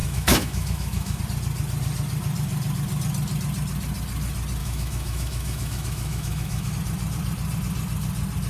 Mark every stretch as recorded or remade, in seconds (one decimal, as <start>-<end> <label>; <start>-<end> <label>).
0.0-1.2 remade; 1.2-4.6 recorded; 4.6-6.7 remade; 6.7-8.5 recorded